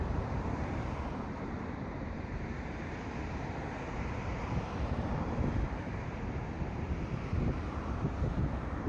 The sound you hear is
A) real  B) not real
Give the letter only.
B